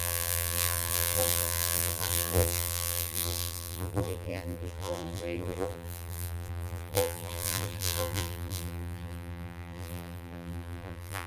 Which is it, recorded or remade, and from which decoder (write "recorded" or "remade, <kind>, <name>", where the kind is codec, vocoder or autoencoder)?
remade, vocoder, BigVGAN v2